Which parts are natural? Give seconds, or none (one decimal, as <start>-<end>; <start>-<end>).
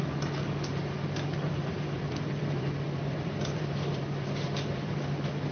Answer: 0.0-1.7; 5.0-5.5